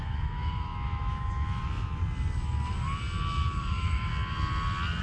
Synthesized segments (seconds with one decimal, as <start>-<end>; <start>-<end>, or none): 0.0-2.0; 3.6-4.1